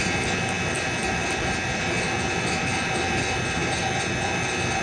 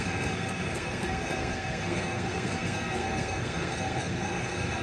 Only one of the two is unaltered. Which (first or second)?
first